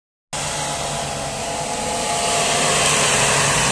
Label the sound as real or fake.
real